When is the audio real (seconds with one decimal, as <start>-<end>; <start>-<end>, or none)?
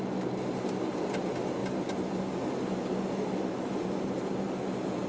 0.0-5.1